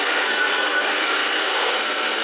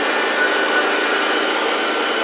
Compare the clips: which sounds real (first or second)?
second